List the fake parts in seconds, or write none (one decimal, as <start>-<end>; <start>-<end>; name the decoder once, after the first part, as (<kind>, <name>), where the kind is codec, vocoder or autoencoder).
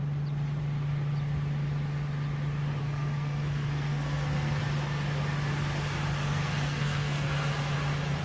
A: 2.8-4.6 (codec, SNAC); 6.2-7.3